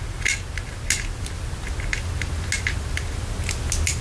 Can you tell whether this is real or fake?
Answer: real